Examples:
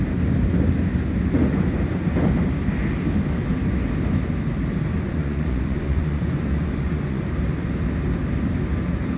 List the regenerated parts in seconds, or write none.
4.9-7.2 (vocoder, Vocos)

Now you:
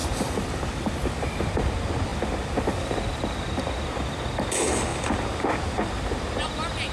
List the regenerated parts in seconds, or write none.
0.0-1.7 (vocoder, BigVGAN v2); 4.9-5.9

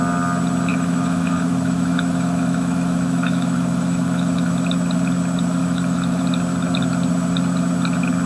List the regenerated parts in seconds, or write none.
0.7-4.5 (autoencoder, DAC-VAE); 5.6-6.2